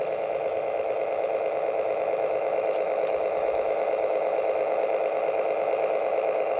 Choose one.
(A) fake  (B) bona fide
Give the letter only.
A